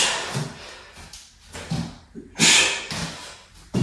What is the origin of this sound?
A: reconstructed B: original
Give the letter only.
B